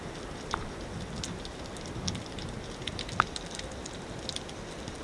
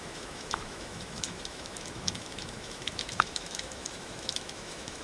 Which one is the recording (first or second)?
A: first